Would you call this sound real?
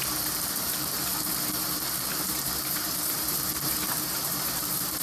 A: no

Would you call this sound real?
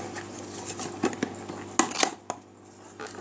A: yes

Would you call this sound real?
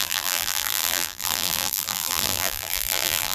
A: no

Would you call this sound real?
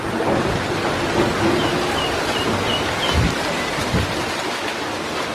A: yes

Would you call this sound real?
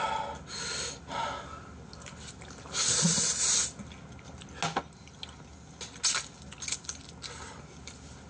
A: yes